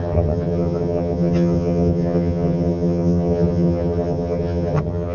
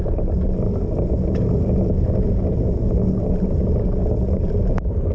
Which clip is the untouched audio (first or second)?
second